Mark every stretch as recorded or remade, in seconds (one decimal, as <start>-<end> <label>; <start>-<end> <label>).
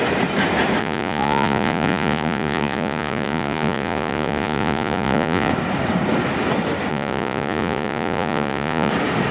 0.0-0.8 recorded; 0.8-5.5 remade; 5.5-6.9 recorded; 6.9-8.9 remade; 8.9-9.3 recorded